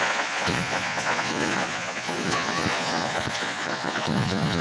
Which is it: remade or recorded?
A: remade